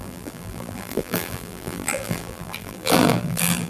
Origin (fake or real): fake